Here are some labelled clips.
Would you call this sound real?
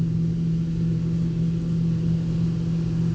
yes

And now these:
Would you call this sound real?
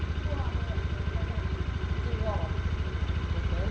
yes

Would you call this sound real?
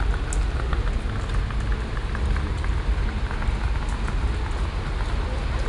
yes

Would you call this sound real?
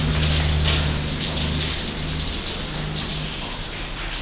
yes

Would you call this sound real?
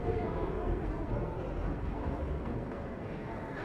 no